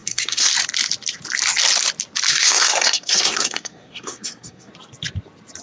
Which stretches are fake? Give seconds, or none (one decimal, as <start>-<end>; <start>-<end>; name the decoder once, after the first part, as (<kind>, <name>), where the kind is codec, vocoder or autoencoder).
0.0-0.5 (codec, SNAC); 2.3-4.7